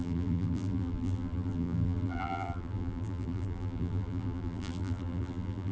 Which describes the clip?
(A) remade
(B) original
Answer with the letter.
A